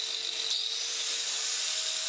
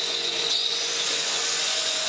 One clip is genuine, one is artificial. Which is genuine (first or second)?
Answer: first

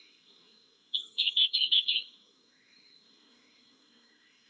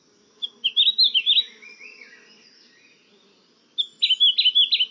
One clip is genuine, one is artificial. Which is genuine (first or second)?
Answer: second